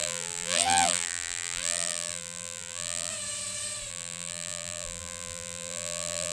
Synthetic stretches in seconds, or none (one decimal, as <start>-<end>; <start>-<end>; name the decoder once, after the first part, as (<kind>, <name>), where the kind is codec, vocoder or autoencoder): 0.0-3.1 (vocoder, BigVGAN v2); 3.9-6.3